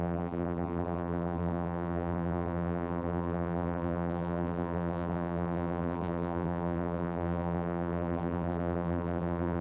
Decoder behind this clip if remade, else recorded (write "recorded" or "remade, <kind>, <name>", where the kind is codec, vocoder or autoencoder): remade, vocoder, BigVGAN v2